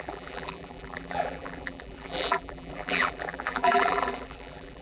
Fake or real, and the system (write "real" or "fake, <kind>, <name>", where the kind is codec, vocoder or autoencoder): fake, vocoder, BigVGAN v2